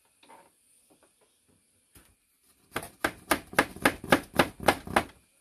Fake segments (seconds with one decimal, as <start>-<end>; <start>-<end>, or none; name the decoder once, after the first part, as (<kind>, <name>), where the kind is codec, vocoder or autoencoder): none

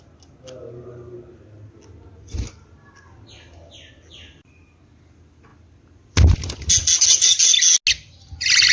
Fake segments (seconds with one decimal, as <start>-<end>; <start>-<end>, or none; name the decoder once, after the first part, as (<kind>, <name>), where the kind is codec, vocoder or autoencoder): none

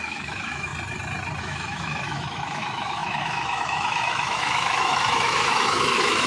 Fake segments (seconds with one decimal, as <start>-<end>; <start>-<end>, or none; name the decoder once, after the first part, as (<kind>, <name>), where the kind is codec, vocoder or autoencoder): 0.0-0.7 (autoencoder, DAC-VAE); 1.4-6.3

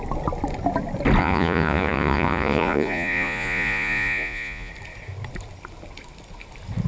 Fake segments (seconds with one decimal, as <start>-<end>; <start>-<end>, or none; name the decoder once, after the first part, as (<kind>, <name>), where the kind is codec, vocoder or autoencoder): 1.2-4.7 (vocoder, Vocos)

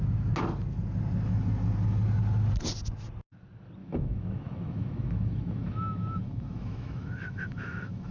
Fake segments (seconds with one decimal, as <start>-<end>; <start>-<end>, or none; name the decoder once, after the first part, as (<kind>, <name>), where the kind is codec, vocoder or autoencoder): 3.8-8.1 (autoencoder, DAC-VAE)

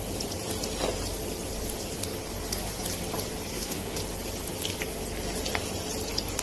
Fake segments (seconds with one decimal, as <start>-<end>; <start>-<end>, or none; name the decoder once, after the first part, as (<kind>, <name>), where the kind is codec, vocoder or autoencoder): 3.5-4.0 (codec, SNAC)

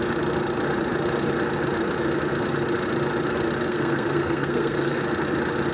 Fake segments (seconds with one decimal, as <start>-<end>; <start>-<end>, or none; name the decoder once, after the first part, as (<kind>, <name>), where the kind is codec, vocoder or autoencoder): 3.7-5.0 (codec, SNAC)